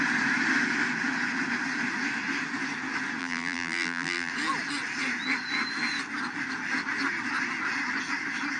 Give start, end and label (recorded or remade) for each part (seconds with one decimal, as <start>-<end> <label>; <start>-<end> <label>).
0.0-3.2 recorded; 3.2-4.3 remade; 4.3-8.6 recorded